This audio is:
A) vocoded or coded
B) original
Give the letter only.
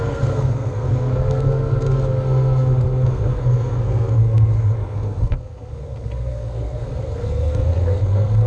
A